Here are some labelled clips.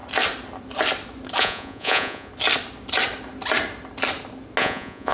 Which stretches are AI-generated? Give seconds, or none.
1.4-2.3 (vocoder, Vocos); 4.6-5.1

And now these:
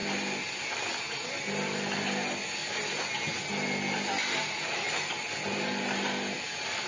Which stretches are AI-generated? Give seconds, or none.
none

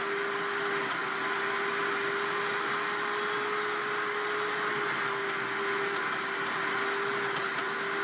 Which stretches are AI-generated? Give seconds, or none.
none

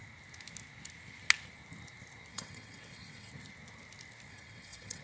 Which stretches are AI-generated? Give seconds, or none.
2.3-3.3 (vocoder, WaveNeXt); 4.3-5.0

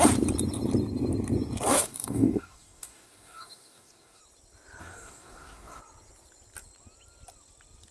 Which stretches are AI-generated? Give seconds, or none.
1.7-4.2 (codec, DAC); 4.8-5.8

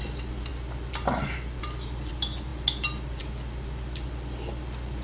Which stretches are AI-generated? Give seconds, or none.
none